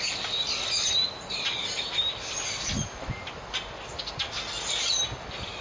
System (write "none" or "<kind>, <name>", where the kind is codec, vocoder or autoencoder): none